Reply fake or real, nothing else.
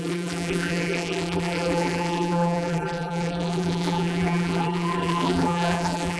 fake